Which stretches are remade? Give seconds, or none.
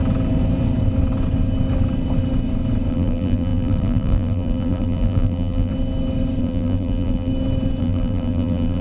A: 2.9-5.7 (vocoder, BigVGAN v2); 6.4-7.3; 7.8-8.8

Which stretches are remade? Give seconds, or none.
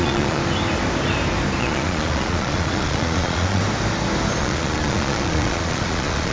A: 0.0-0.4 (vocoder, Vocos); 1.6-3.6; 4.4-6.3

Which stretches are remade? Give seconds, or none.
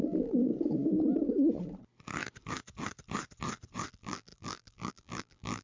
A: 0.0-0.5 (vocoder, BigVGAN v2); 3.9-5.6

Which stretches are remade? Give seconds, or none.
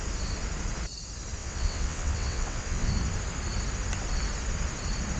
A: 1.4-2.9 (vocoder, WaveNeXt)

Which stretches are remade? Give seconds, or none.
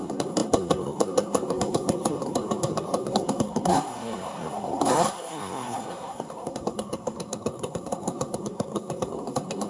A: 0.0-9.7 (codec, SNAC)